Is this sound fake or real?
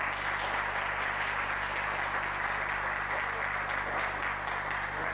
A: real